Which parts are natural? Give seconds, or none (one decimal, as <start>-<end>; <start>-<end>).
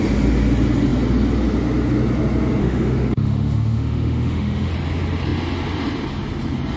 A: 0.0-2.6; 4.7-6.8